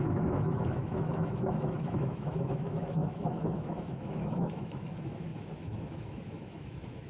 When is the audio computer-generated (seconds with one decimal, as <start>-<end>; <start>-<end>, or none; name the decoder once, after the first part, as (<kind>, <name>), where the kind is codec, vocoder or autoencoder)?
0.0-7.1 (autoencoder, DAC-VAE)